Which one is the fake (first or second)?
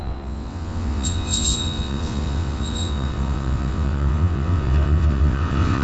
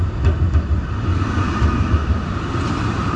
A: first